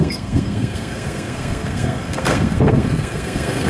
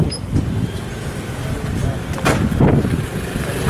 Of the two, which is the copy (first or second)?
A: first